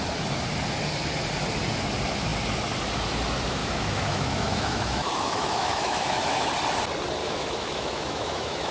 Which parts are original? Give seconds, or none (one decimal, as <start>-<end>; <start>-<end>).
0.0-3.6; 6.5-7.2